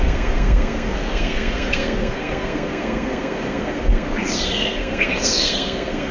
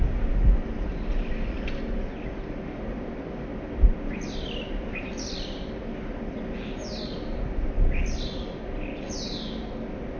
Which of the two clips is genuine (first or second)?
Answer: second